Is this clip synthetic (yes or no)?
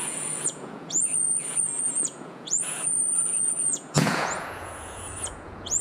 yes